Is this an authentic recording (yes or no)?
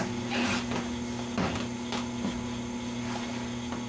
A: yes